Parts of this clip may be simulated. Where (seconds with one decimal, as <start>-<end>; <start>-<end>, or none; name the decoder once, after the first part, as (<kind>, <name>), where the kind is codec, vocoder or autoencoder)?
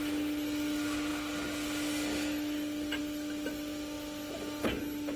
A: none